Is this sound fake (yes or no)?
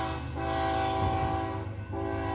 no